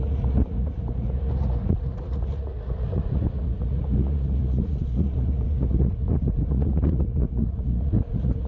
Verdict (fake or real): fake